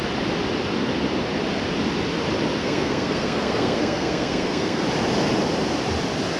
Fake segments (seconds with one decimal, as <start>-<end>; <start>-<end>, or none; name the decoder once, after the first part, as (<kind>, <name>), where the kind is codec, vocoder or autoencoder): 2.6-4.8 (codec, SNAC)